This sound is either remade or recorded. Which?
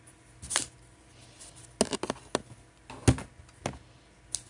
recorded